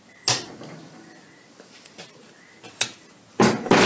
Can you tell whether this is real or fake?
real